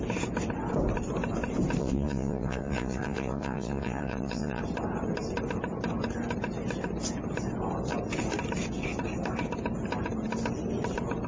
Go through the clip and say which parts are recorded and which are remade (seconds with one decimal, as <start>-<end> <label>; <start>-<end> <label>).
0.0-1.8 recorded; 1.8-4.6 remade; 4.6-11.3 recorded